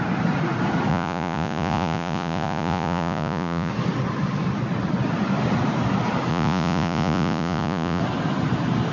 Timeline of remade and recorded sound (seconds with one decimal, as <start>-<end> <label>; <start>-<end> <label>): 0.0-0.9 recorded; 0.9-3.7 remade; 3.7-6.3 recorded; 6.3-8.0 remade; 8.0-8.9 recorded